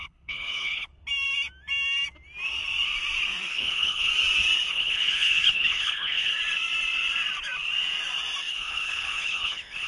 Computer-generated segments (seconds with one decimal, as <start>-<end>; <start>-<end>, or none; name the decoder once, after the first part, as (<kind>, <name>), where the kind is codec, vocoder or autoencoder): 0.0-0.9 (codec, HILCodec); 3.5-4.1; 4.7-6.3; 8.5-9.9